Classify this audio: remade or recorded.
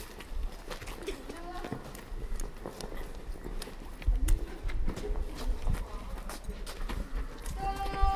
recorded